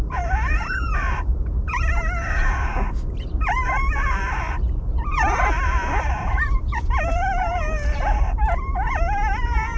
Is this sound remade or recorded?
remade